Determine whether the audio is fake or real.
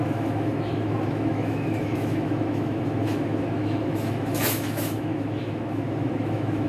fake